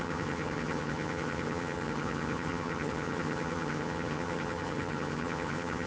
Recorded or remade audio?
remade